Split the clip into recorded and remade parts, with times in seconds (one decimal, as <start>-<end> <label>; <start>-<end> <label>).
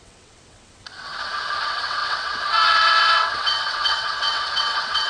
0.0-1.1 remade; 1.1-1.6 recorded; 1.6-5.1 remade